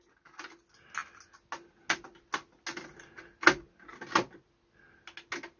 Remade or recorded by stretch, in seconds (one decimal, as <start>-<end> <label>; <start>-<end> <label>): 0.0-5.6 recorded